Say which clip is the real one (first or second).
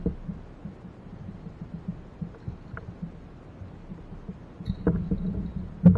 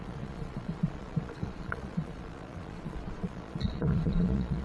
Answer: first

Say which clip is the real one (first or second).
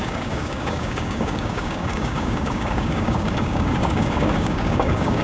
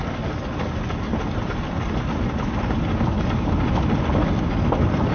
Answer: second